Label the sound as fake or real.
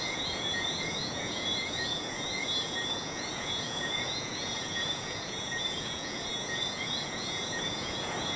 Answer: fake